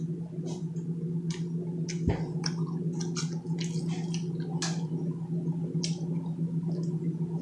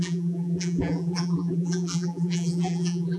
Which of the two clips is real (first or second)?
first